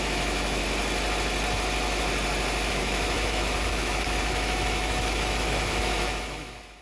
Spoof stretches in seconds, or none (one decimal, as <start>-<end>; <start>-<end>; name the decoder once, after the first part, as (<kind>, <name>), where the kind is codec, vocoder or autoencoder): 0.0-0.6 (autoencoder, DAC-VAE); 2.7-6.8